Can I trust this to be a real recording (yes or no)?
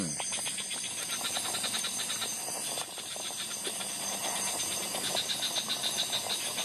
yes